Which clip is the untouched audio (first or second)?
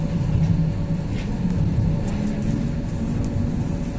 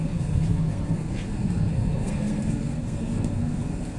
first